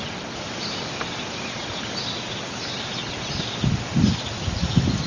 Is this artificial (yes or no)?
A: no